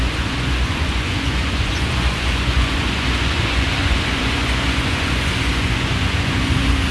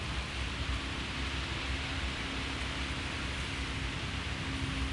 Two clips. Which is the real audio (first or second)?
second